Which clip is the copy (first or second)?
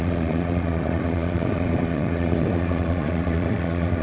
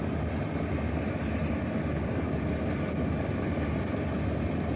first